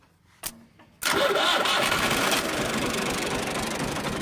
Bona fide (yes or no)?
yes